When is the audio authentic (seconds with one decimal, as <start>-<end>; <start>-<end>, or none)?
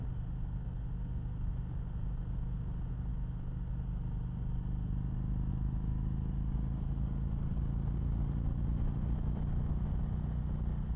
0.0-11.0